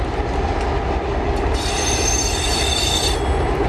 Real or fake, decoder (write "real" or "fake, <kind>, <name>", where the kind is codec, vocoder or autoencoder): real